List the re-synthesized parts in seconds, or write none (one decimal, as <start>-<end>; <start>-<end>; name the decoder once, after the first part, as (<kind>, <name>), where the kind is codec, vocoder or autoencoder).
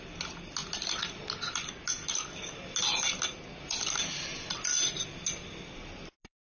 none